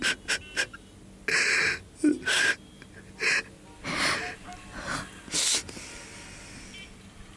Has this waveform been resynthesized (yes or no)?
no